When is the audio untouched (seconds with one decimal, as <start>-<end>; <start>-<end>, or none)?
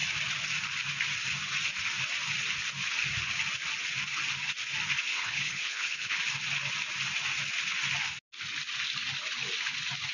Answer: 0.0-5.1; 6.2-10.1